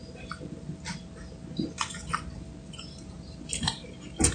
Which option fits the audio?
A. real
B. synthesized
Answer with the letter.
A